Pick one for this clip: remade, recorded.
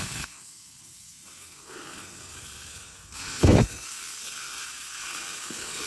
remade